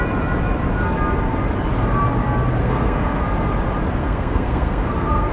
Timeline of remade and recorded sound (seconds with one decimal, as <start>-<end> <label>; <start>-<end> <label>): 0.0-2.6 recorded; 2.6-3.2 remade; 3.2-4.0 recorded; 4.0-5.3 remade